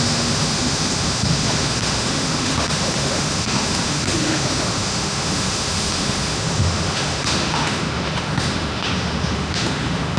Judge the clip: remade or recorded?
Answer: remade